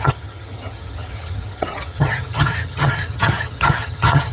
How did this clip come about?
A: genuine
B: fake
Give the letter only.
B